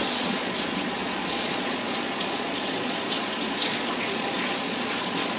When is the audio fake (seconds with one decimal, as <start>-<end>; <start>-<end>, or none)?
0.0-5.4